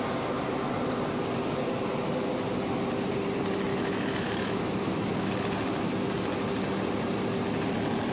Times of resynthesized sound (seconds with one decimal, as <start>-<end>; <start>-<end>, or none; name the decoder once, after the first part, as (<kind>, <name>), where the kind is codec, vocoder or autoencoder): 3.7-5.3 (autoencoder, DAC-VAE)